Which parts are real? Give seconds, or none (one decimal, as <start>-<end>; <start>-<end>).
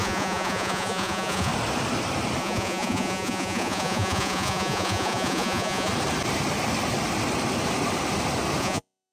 1.5-2.4; 5.9-8.6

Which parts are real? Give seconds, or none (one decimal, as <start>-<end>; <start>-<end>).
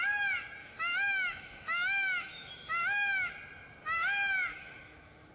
0.0-0.6; 3.3-4.5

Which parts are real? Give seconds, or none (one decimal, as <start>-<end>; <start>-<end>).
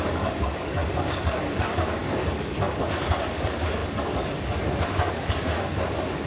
none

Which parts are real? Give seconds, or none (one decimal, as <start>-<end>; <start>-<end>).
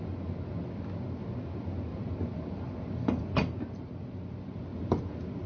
0.0-1.9; 4.6-5.5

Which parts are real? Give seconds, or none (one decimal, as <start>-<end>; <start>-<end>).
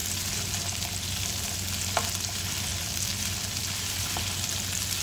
1.5-2.7; 4.2-5.0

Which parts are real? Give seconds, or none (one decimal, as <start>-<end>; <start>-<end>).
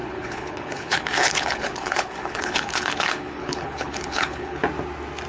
4.6-5.3